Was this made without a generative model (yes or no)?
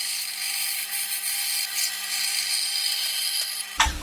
yes